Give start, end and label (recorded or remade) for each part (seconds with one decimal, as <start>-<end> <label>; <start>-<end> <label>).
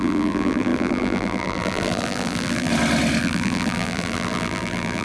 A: 0.0-2.7 remade; 2.7-3.2 recorded; 3.2-5.0 remade